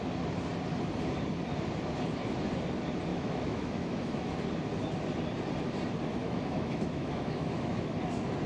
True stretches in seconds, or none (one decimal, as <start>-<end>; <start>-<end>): 0.0-3.1; 4.3-6.2; 7.9-8.5